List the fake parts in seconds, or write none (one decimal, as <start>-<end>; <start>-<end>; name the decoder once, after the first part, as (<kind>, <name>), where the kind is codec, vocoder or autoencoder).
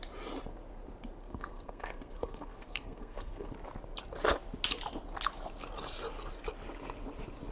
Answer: 1.2-3.5 (codec, SNAC)